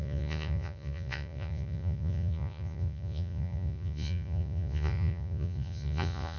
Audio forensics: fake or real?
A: fake